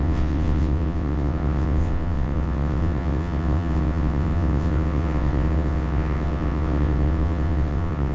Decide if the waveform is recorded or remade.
remade